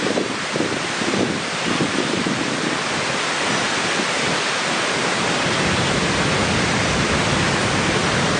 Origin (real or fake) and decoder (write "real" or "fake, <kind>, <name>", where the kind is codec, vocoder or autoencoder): real